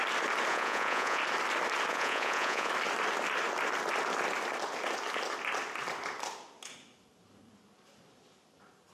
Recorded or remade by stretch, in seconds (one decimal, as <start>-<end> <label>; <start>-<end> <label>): 0.0-0.5 recorded; 0.5-1.2 remade; 1.2-1.9 recorded; 1.9-2.7 remade; 2.7-8.9 recorded